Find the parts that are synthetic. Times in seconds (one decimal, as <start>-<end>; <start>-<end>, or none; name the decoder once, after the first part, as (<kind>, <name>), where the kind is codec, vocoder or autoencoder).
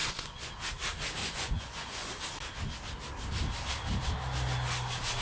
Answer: 0.0-0.5 (vocoder, Vocos); 1.2-2.1